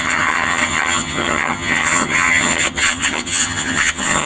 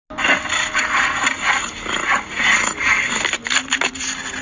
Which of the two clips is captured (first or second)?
second